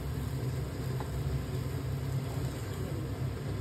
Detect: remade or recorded recorded